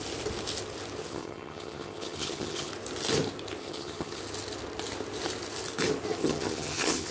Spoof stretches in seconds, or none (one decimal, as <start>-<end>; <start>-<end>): 1.0-2.7; 3.6-4.2; 6.2-7.1